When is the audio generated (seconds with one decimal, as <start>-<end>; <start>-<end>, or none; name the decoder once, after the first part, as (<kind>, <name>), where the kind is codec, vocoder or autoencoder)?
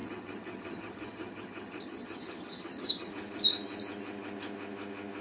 0.0-3.1 (vocoder, HiFi-GAN)